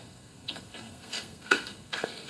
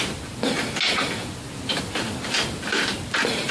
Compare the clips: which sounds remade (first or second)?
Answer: first